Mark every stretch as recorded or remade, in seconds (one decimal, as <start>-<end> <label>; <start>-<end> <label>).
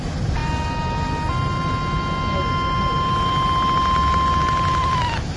0.0-5.4 recorded